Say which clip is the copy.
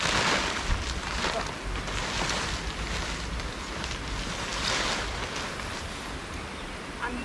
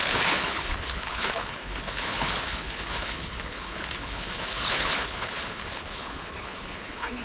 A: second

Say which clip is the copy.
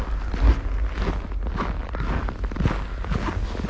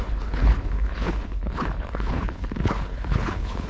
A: second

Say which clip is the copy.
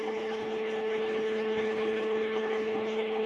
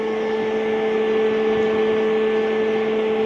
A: first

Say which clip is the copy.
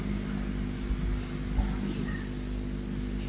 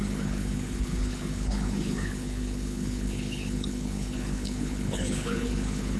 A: second